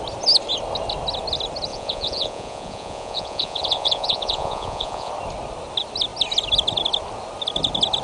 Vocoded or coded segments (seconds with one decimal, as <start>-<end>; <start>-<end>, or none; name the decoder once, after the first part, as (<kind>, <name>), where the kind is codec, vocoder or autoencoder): 1.7-5.1 (vocoder, Vocos)